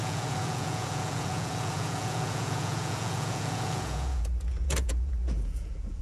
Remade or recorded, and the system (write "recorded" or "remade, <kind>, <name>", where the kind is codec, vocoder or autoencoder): remade, vocoder, Vocos